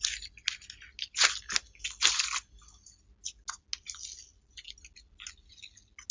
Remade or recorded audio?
recorded